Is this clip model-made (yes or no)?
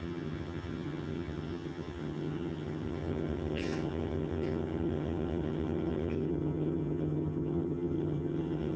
yes